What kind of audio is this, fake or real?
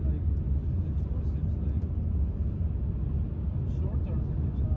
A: real